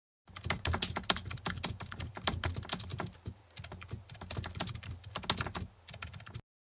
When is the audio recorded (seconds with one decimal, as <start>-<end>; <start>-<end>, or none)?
0.0-6.7

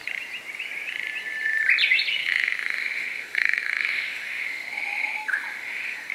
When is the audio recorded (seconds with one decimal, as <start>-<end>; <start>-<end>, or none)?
0.0-2.2

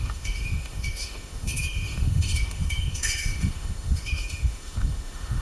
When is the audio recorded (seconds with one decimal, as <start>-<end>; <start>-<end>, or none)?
none

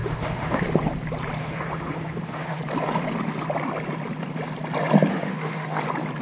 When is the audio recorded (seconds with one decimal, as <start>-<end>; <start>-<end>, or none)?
0.6-1.4; 2.6-5.1; 5.8-6.2

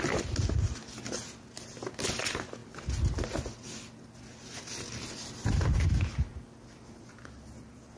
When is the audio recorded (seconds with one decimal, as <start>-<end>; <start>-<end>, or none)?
0.0-8.0

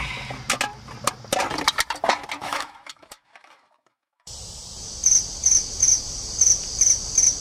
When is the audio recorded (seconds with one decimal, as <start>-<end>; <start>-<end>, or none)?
0.0-2.4; 4.3-7.4

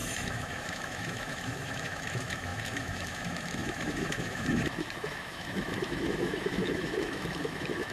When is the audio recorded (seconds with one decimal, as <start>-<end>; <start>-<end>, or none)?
none

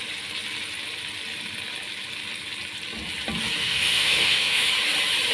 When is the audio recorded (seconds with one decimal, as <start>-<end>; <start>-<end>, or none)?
0.0-3.6; 4.7-5.3